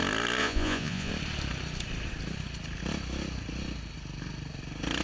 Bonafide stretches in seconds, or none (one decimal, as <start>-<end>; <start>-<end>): 0.0-0.4; 1.1-5.0